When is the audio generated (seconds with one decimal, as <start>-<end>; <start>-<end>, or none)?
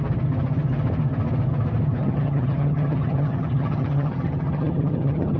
2.0-5.4